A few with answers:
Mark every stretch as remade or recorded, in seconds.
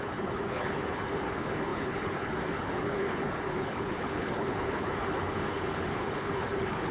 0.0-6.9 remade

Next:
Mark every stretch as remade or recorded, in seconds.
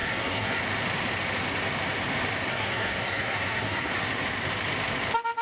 0.0-0.6 remade; 0.6-2.5 recorded; 2.5-3.9 remade; 3.9-5.4 recorded